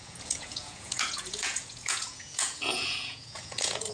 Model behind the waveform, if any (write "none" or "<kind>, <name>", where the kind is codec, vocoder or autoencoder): vocoder, Vocos